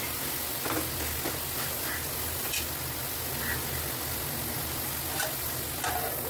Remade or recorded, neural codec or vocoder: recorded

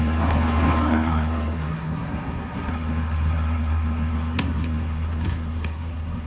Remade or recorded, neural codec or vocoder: remade, codec, SNAC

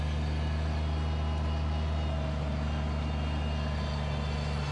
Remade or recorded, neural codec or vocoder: recorded